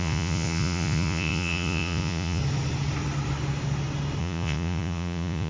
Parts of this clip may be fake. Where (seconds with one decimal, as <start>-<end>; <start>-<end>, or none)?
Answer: 0.0-2.4; 4.2-5.5